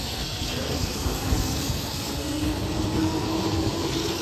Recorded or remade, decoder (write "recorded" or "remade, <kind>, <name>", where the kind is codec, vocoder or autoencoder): remade, codec, SNAC